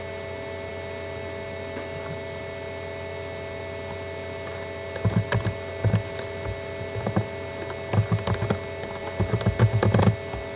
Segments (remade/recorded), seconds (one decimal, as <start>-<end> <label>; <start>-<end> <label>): 0.0-10.6 recorded